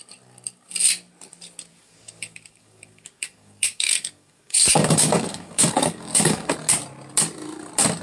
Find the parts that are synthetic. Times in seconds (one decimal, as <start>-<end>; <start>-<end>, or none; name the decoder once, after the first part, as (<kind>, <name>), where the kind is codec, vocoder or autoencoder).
1.7-6.5 (codec, DAC)